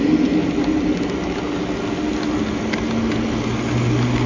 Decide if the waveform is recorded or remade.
recorded